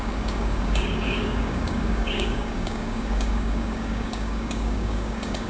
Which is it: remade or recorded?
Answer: remade